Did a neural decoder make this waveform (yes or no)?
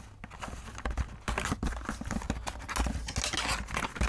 no